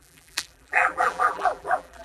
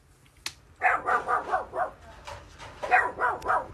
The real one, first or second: second